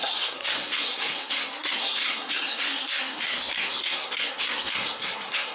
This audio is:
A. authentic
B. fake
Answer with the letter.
B